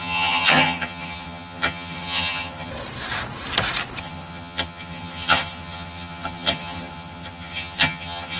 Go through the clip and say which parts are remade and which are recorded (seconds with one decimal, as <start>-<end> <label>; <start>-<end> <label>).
0.0-2.7 remade; 2.7-4.0 recorded; 4.0-8.4 remade